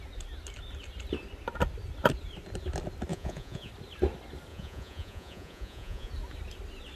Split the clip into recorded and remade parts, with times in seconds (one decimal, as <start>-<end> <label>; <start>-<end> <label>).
0.0-3.1 recorded; 3.1-3.7 remade; 3.7-4.5 recorded; 4.5-6.1 remade; 6.1-7.0 recorded